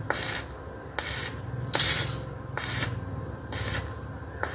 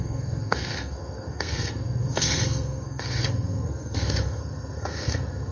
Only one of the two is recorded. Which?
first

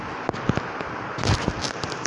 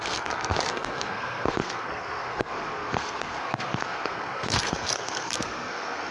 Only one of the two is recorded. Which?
first